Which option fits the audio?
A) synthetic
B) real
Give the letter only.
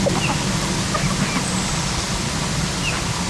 B